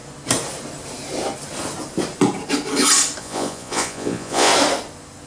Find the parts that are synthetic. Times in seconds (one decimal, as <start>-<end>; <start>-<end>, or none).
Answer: 3.2-4.5